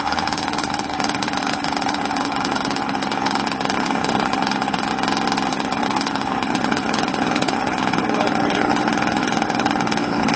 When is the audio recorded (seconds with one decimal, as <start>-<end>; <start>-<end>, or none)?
4.9-5.5